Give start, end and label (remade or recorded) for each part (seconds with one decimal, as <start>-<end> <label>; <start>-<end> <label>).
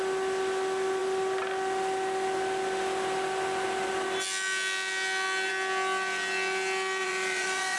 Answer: 0.0-7.0 recorded; 7.0-7.8 remade